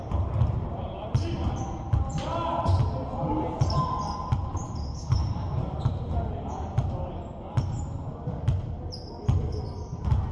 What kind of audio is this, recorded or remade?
recorded